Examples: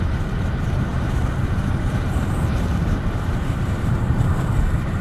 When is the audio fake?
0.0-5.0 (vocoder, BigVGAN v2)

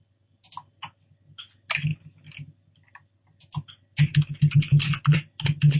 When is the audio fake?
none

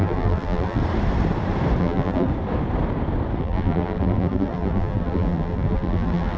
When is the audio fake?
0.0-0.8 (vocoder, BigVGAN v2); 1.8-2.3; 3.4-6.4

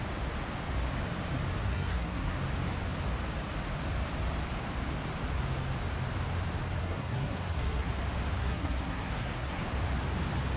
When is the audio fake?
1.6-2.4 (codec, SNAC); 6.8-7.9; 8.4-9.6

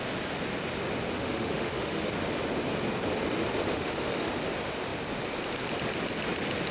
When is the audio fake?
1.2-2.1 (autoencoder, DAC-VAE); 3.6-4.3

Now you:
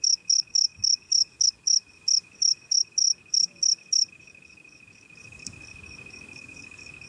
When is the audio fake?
0.0-7.1 (codec, DAC)